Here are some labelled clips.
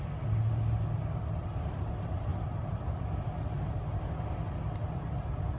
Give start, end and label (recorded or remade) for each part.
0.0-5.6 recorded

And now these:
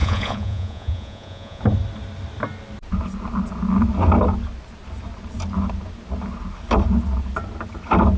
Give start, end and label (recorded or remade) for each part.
0.0-1.6 remade; 1.6-8.2 recorded

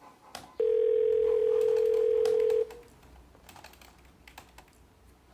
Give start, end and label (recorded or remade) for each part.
0.0-5.3 recorded

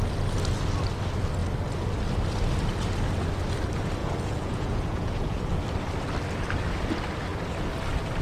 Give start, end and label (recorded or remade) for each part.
0.0-4.0 recorded; 4.0-5.4 remade; 5.4-8.2 recorded